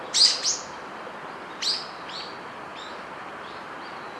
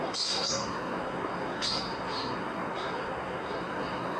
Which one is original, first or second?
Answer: first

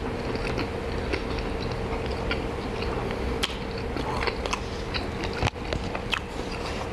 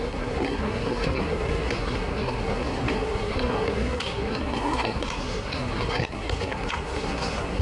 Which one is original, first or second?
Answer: first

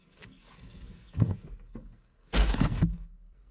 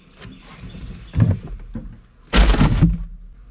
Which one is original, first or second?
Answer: second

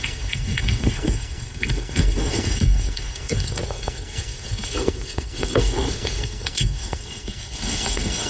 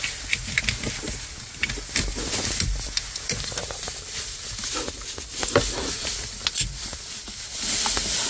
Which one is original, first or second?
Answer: second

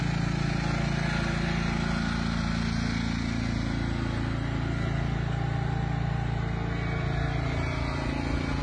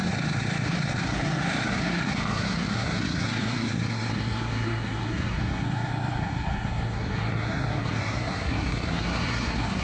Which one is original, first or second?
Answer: first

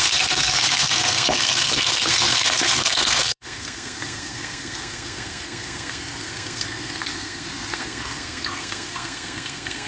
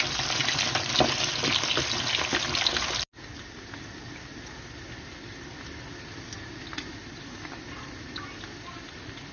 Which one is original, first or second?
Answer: second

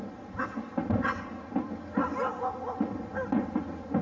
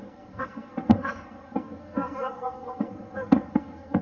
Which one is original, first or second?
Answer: first